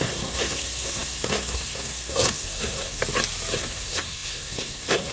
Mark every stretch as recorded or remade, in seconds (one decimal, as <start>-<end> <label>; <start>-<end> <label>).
0.0-3.0 remade; 3.0-3.6 recorded; 3.6-5.1 remade